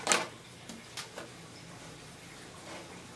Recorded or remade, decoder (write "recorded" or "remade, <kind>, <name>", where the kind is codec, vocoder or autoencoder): recorded